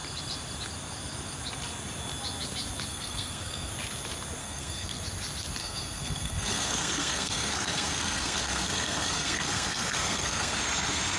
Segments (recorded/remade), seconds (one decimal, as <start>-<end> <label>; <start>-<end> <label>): 0.0-2.9 recorded; 2.9-3.7 remade; 3.7-4.4 recorded; 4.4-5.0 remade; 5.0-5.6 recorded; 5.6-11.2 remade